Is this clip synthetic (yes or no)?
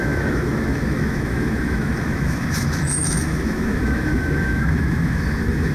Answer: yes